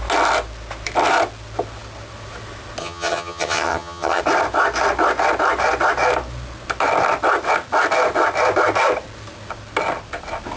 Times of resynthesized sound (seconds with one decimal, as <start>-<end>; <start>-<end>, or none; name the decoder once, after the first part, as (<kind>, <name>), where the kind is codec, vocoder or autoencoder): 2.8-4.2 (vocoder, HiFi-GAN)